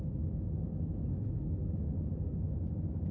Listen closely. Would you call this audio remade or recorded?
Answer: remade